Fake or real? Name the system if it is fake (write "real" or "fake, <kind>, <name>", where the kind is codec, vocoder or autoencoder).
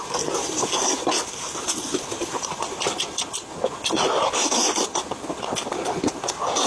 real